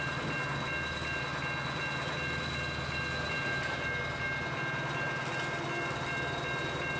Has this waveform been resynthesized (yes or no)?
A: no